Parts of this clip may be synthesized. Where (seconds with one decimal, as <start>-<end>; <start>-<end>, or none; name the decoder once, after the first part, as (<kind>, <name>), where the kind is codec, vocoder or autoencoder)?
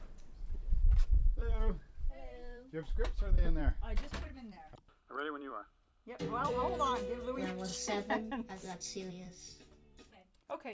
0.0-3.6 (vocoder, BigVGAN v2); 4.2-7.7; 9.1-10.7